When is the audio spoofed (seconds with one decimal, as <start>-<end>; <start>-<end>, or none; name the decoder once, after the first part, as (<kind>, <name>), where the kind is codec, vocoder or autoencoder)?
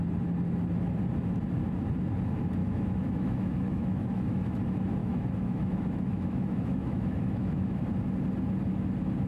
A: 2.6-4.6 (autoencoder, DAC-VAE); 5.0-7.8